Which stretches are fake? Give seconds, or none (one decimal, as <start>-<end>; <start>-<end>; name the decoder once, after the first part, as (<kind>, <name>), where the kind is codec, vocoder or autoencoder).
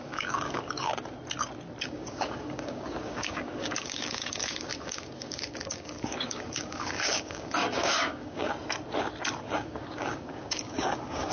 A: 0.0-0.9 (codec, DAC); 1.8-8.5; 9.4-11.3